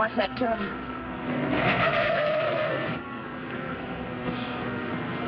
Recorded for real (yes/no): no